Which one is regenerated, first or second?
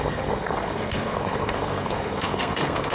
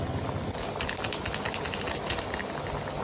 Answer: first